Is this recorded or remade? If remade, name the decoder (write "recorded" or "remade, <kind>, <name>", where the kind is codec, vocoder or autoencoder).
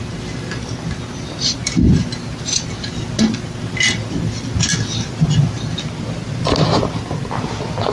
recorded